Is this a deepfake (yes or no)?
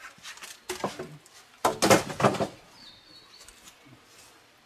no